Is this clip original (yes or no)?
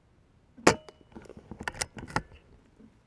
yes